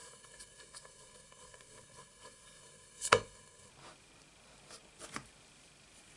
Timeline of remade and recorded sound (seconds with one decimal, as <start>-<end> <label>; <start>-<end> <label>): 0.0-3.7 remade; 3.7-6.2 recorded